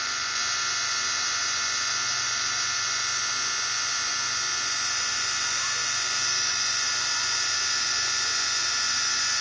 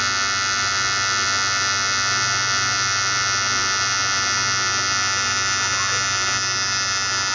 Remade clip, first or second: first